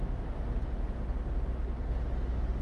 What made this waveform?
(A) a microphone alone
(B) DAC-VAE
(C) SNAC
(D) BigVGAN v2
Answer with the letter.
A